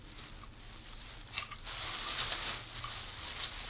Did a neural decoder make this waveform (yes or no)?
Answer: no